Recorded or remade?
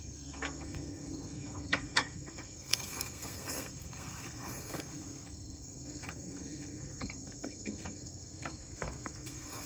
remade